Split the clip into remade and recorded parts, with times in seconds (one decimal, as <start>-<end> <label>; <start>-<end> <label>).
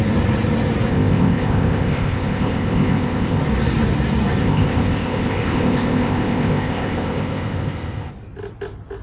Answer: 0.0-0.9 recorded; 0.9-3.4 remade; 3.4-4.4 recorded; 4.4-8.1 remade; 8.1-9.0 recorded